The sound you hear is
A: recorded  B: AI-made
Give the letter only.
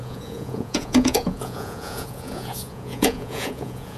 B